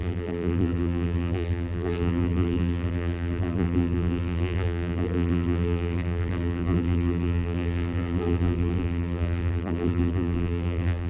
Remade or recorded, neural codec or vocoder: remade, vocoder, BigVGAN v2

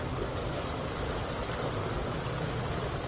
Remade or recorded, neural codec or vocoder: recorded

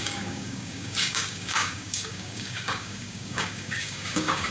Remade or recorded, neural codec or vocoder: remade, codec, DAC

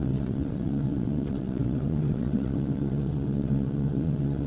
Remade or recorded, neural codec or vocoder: remade, vocoder, WaveNeXt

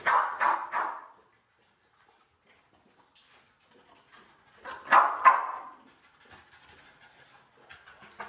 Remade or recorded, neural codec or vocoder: recorded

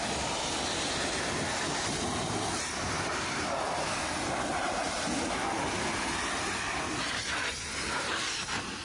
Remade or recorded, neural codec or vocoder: recorded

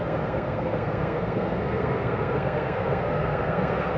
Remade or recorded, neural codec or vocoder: remade, codec, SNAC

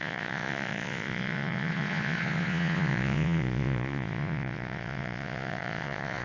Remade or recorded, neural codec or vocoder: remade, vocoder, Vocos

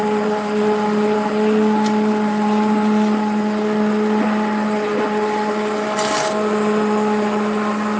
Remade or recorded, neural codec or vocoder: recorded